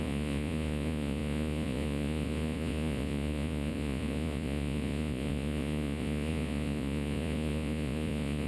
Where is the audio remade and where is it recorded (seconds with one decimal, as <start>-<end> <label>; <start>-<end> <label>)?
0.0-8.5 remade